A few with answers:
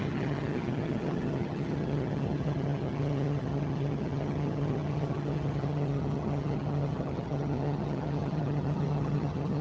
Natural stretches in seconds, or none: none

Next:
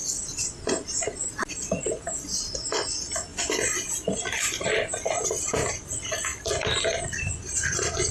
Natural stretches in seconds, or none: 0.0-3.3; 4.9-6.3; 7.3-8.1

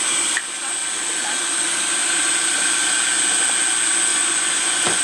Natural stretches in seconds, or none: 0.0-4.1

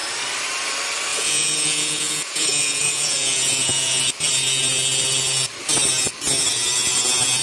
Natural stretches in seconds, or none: 0.0-1.1; 4.0-7.4

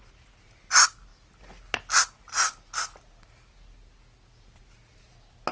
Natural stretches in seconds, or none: 0.0-5.5

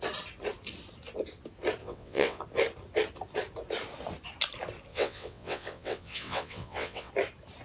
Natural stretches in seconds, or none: 0.0-1.8; 2.4-4.9; 7.1-7.6

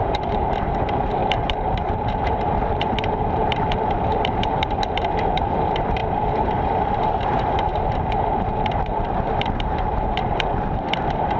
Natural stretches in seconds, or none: none

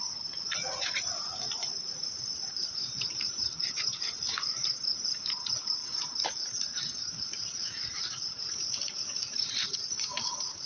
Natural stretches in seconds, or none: 5.8-7.2